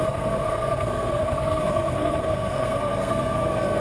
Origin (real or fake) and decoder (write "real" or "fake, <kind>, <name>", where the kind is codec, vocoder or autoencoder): fake, codec, SNAC